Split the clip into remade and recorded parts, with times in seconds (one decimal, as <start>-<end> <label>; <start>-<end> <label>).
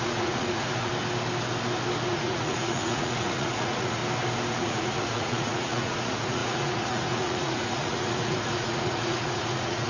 0.0-0.9 remade; 0.9-2.1 recorded; 2.1-4.0 remade; 4.0-4.6 recorded; 4.6-9.9 remade